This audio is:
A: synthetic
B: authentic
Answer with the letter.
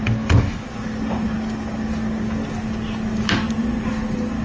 B